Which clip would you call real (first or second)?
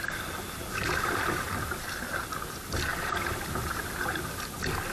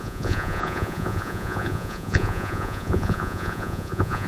first